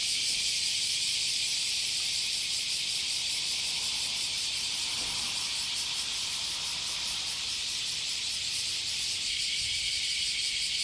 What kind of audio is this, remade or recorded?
remade